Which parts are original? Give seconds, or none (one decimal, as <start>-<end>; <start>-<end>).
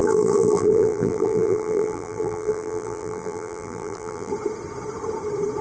4.3-5.6